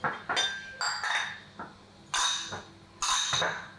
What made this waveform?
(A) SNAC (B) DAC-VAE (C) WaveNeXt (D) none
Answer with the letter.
D